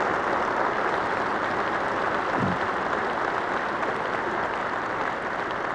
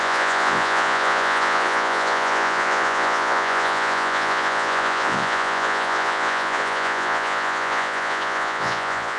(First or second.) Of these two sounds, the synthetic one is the second